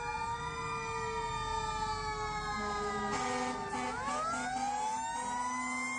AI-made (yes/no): no